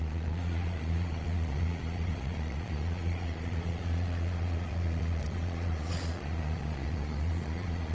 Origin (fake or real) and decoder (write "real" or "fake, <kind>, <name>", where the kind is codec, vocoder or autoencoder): fake, vocoder, Vocos